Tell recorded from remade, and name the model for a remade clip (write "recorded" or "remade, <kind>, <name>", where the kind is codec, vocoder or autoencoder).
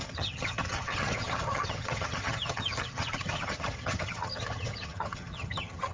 remade, vocoder, HiFi-GAN